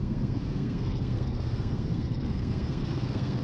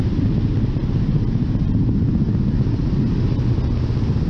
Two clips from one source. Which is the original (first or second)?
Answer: second